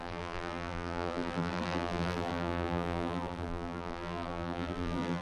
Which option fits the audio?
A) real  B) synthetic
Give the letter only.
B